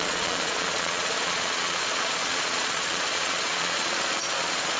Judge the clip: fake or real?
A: fake